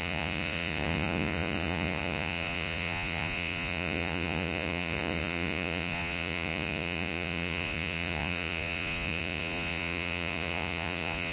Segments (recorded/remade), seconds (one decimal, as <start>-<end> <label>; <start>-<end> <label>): 0.0-11.3 remade